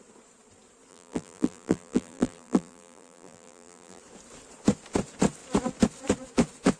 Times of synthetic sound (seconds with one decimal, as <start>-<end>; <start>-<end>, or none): 0.9-4.0